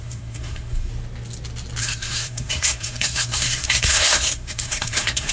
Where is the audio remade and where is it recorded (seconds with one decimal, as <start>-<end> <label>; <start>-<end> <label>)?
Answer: 0.0-0.9 remade; 0.9-1.8 recorded; 1.8-5.3 remade